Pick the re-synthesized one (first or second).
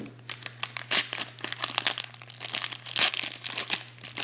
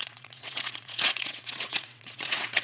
second